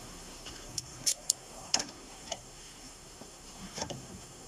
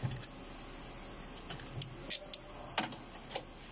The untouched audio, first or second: second